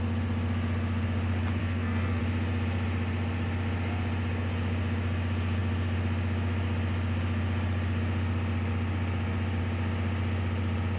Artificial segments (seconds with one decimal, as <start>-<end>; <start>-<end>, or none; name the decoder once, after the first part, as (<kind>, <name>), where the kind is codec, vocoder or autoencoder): 1.6-2.2 (codec, SNAC)